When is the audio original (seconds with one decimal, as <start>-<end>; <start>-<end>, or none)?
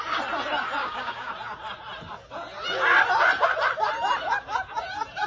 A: 0.0-0.8; 1.3-5.3